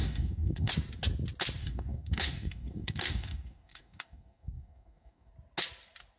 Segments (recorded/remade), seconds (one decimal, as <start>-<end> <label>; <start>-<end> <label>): 0.0-0.7 remade; 0.7-1.6 recorded; 1.6-5.3 remade; 5.3-6.2 recorded